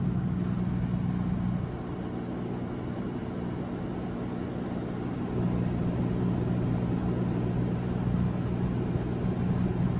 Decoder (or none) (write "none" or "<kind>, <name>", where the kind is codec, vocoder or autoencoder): none